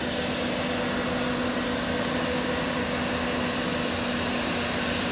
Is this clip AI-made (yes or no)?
no